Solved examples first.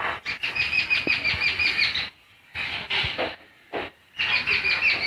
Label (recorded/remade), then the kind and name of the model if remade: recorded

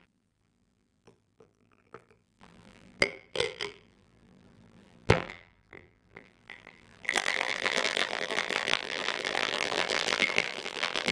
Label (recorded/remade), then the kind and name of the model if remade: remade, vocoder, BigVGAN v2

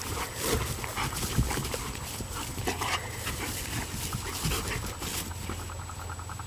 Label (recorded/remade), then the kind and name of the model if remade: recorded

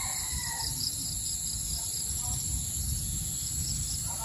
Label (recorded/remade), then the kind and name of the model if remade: recorded